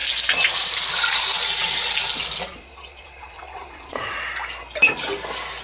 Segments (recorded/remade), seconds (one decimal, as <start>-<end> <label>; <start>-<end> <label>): 0.0-2.5 recorded; 2.5-4.2 remade; 4.2-5.6 recorded